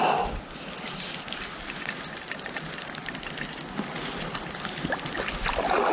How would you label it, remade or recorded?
recorded